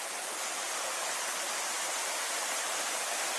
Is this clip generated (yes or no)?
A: no